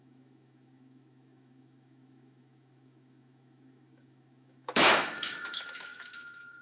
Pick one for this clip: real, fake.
fake